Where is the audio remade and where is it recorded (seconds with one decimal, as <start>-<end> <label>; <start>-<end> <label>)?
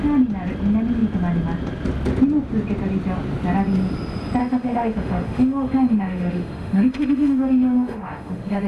0.0-4.4 recorded; 4.4-8.7 remade